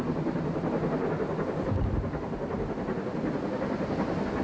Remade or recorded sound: recorded